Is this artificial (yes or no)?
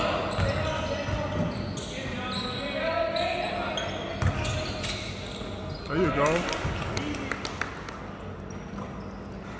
no